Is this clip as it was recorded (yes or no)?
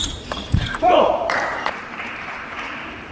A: no